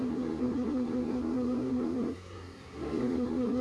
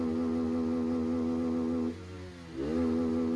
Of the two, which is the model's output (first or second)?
first